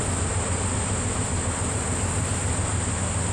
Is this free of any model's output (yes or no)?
yes